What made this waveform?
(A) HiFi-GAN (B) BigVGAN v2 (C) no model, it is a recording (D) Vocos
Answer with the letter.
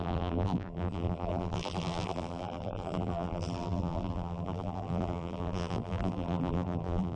B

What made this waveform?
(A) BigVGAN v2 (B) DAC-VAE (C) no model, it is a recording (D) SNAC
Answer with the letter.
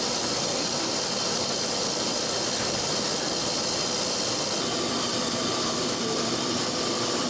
A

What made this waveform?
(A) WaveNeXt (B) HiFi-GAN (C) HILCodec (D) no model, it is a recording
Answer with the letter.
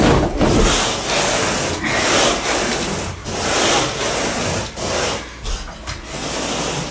D